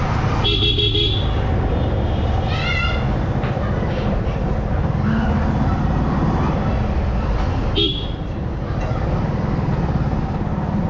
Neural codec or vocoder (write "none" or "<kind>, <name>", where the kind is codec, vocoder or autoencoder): none